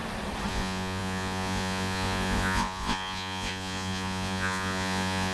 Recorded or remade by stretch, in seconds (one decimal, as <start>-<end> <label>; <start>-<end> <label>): 0.0-0.5 recorded; 0.5-5.3 remade